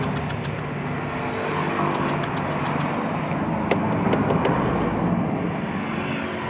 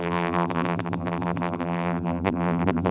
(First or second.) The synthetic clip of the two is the second